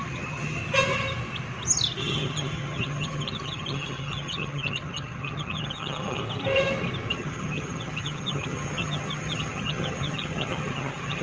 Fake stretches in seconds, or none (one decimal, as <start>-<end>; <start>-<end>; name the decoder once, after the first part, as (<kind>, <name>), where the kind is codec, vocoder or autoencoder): 0.0-0.6 (vocoder, HiFi-GAN); 2.0-6.2; 7.1-11.2